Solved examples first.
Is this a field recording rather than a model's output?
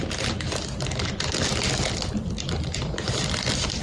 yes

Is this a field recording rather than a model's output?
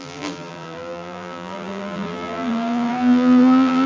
no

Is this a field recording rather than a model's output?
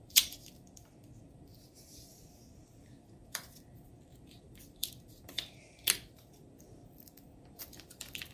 no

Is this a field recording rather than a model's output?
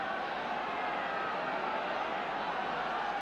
no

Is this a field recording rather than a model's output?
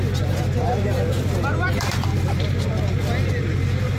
yes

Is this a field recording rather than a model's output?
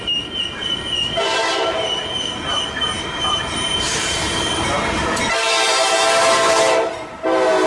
no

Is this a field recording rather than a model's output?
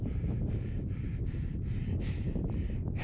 no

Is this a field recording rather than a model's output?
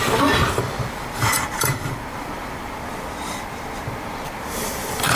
no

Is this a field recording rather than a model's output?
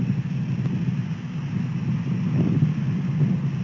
yes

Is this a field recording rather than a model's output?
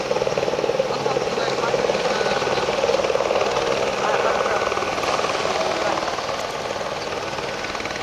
yes